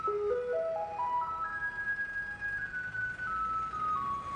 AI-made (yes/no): no